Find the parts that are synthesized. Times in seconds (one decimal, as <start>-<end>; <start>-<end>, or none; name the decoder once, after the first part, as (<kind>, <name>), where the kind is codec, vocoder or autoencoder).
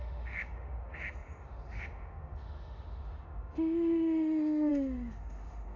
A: 0.0-5.8 (autoencoder, DAC-VAE)